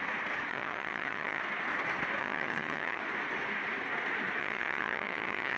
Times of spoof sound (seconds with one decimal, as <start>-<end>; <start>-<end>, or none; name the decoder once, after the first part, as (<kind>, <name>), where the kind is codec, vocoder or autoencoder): 0.5-1.4 (vocoder, HiFi-GAN); 2.2-3.0; 4.4-5.6